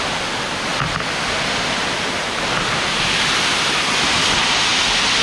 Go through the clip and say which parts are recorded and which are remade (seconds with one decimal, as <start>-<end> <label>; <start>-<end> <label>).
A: 0.0-0.7 recorded; 0.7-3.8 remade; 3.8-5.2 recorded